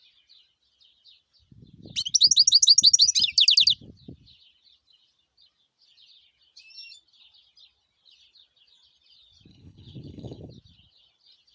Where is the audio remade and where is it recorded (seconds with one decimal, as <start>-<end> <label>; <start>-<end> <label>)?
0.0-9.5 recorded; 9.5-10.5 remade; 10.5-11.5 recorded